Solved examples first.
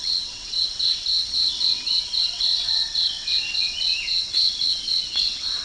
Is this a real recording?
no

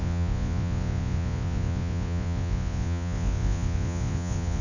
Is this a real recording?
no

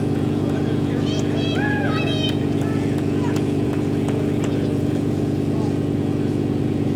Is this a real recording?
no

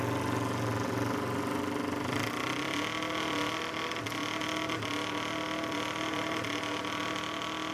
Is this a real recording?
yes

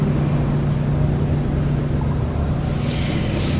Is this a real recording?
no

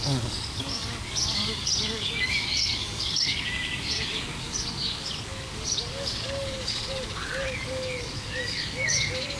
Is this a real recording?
no